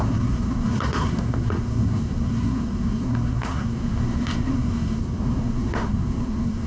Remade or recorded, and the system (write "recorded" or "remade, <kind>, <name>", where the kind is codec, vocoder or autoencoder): remade, codec, SNAC